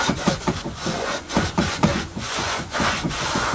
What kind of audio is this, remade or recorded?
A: remade